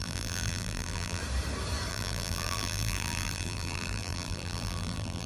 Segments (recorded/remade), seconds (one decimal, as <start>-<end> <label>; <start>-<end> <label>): 0.0-1.2 remade; 1.2-1.9 recorded; 1.9-5.3 remade